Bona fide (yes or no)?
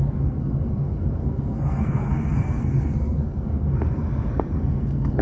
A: no